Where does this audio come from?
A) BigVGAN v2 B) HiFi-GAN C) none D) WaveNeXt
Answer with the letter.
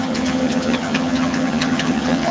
B